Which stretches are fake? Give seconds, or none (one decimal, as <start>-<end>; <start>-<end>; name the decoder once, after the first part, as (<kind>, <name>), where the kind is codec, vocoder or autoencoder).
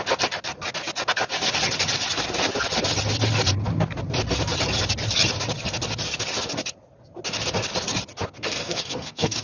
8.4-9.4 (codec, SNAC)